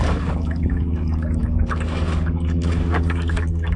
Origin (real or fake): fake